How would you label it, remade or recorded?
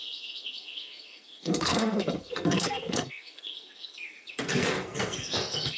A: remade